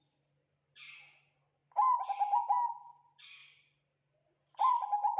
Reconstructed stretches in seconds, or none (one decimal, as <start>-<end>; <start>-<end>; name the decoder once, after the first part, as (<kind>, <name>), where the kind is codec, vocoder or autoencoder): 0.0-1.6 (vocoder, BigVGAN v2); 2.7-5.2